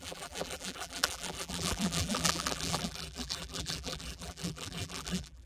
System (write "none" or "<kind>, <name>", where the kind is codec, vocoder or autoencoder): vocoder, BigVGAN v2